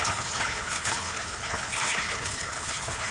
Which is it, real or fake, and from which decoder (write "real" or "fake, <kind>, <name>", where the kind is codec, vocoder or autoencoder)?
fake, codec, HILCodec